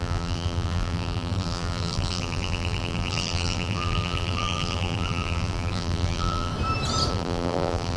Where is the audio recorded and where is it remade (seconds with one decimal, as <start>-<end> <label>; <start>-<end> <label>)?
0.0-6.5 remade; 6.5-7.1 recorded; 7.1-8.0 remade